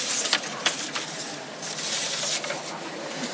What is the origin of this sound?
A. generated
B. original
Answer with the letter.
B